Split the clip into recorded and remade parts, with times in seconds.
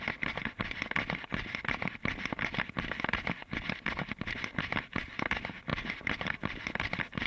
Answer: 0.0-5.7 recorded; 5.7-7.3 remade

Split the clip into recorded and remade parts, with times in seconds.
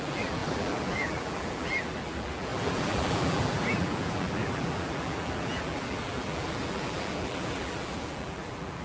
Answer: 0.0-8.8 remade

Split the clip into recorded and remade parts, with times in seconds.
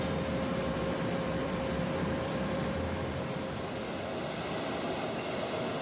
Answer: 0.0-0.6 recorded; 0.6-4.1 remade; 4.1-5.8 recorded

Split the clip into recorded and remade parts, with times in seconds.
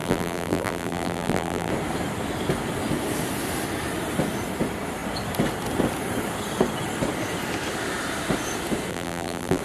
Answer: 0.0-1.7 remade; 1.7-8.9 recorded; 8.9-9.6 remade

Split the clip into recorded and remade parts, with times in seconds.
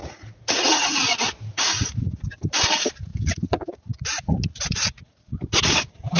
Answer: 0.0-2.2 remade; 2.2-3.1 recorded; 3.1-5.3 remade; 5.3-6.2 recorded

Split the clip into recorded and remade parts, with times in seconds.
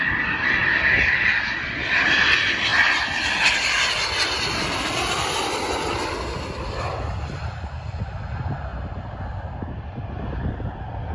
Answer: 0.0-11.1 recorded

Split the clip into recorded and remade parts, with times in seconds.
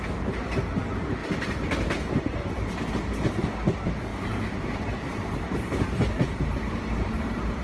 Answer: 0.0-4.1 recorded; 4.1-7.1 remade; 7.1-7.6 recorded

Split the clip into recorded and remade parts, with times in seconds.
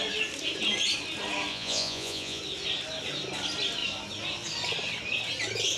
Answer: 0.0-1.5 recorded; 1.5-2.4 remade; 2.4-5.8 recorded